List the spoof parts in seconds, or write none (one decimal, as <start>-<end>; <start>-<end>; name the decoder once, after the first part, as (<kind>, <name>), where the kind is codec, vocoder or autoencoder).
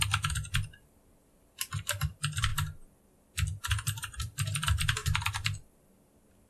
0.0-2.5 (vocoder, BigVGAN v2); 3.6-5.0